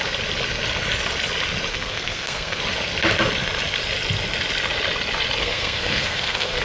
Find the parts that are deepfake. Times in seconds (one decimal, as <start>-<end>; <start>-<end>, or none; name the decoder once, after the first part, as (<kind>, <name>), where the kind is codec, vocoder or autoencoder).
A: 1.7-2.6 (codec, SNAC); 5.4-6.6